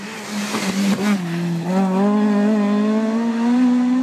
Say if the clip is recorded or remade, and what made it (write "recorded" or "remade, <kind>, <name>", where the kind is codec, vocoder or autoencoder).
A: recorded